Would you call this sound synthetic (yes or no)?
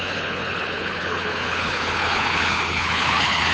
yes